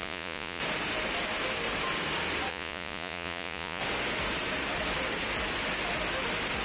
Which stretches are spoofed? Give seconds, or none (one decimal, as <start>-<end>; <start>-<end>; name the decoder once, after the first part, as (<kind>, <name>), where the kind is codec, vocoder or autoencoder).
0.0-0.6 (vocoder, Vocos); 2.5-3.8